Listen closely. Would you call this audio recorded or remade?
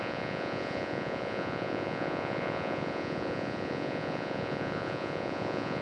remade